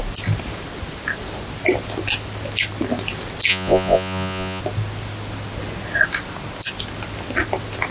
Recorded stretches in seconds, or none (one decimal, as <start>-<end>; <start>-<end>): 0.0-3.5; 4.6-7.9